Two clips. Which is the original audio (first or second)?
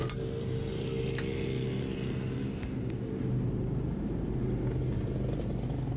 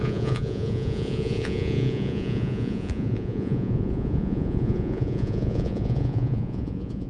first